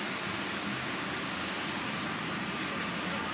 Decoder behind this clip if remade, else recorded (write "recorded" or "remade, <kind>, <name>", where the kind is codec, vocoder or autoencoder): recorded